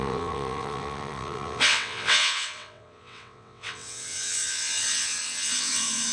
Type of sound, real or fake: fake